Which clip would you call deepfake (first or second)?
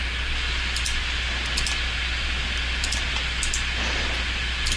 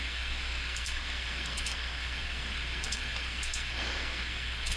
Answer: second